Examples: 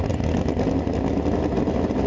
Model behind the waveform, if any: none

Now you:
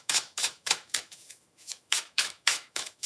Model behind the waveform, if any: autoencoder, DAC-VAE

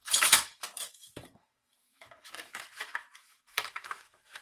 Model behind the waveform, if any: autoencoder, DAC-VAE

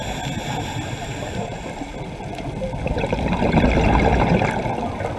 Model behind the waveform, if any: none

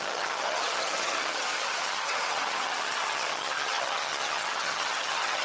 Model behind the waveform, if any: vocoder, HiFi-GAN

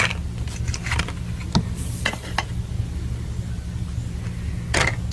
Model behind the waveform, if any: none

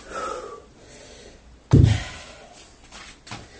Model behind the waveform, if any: none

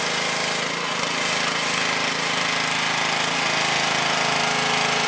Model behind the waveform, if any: none